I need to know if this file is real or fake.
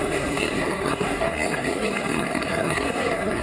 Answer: fake